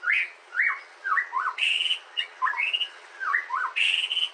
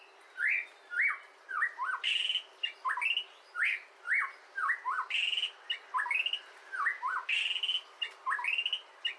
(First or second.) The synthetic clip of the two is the first